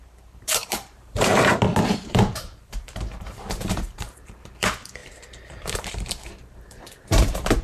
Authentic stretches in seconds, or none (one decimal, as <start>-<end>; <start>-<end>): 1.3-1.8